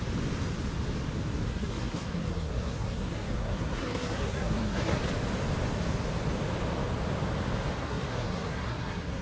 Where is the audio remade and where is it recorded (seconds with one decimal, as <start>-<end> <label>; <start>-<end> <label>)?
0.0-1.5 recorded; 1.5-5.0 remade; 5.0-7.8 recorded; 7.8-9.2 remade

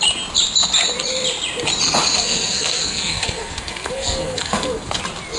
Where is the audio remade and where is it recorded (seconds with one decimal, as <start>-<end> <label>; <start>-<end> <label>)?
0.0-2.2 recorded; 2.2-5.0 remade; 5.0-5.4 recorded

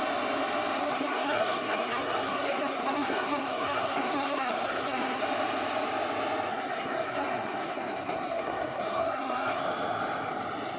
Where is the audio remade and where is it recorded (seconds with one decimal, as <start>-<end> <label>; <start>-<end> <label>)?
0.0-0.8 recorded; 0.8-5.2 remade; 5.2-6.5 recorded; 6.5-9.6 remade; 9.6-10.8 recorded

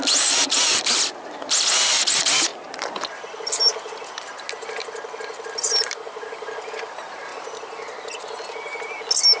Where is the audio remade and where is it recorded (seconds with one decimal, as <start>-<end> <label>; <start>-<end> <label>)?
0.0-9.4 recorded

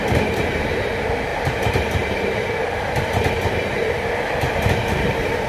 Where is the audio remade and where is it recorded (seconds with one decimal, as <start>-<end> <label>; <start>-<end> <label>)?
0.0-5.5 recorded